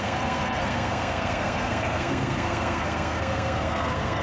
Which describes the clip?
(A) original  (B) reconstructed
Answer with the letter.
B